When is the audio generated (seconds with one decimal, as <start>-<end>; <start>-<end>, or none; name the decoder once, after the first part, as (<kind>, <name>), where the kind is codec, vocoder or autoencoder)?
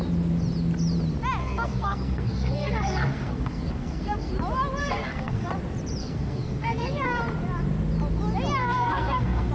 1.4-4.3 (codec, SNAC); 4.8-5.5; 6.0-7.2; 8.6-9.5